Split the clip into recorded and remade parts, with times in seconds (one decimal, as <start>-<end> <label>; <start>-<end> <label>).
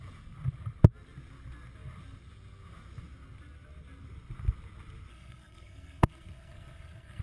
0.0-5.1 recorded; 5.1-7.2 remade